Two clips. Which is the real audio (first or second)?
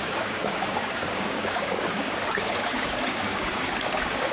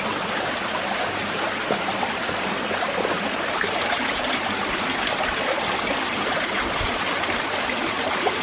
second